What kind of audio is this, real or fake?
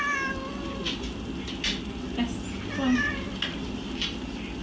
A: real